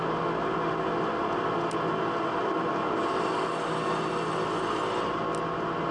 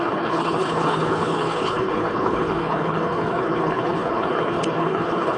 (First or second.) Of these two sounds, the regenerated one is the second